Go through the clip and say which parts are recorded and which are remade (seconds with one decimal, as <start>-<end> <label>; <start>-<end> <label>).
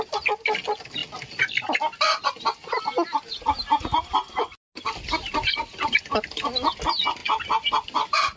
0.0-8.4 recorded